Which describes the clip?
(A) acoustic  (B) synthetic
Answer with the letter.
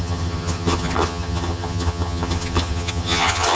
B